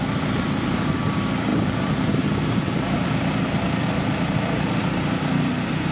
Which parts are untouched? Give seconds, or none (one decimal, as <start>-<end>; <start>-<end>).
0.0-1.5; 4.9-5.9